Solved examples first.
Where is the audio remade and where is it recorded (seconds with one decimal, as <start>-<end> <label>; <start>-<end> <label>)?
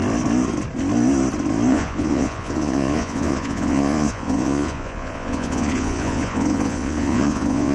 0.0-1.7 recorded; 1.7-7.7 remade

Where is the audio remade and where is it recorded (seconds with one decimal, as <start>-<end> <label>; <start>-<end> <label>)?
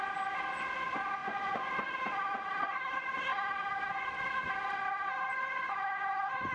0.0-1.2 recorded; 1.2-1.7 remade; 1.7-5.3 recorded; 5.3-6.5 remade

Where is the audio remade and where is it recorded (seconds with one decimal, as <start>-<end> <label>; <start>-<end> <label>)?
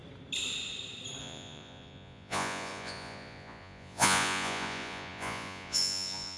0.0-1.2 recorded; 1.2-6.4 remade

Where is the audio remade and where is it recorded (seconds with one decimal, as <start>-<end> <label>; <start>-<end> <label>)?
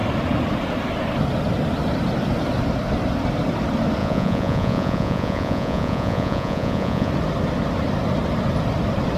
0.0-4.0 recorded; 4.0-7.1 remade; 7.1-9.2 recorded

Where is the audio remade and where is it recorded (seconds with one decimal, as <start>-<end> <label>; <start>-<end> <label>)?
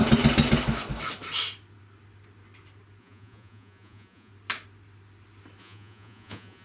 0.0-3.0 recorded; 3.0-4.3 remade; 4.3-5.6 recorded; 5.6-6.6 remade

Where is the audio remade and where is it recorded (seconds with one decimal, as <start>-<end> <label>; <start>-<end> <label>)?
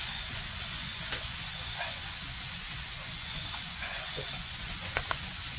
0.0-5.6 remade